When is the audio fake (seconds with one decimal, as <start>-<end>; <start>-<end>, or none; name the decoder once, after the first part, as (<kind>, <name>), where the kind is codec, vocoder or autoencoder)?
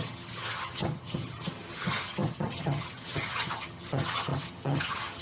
0.0-5.2 (vocoder, HiFi-GAN)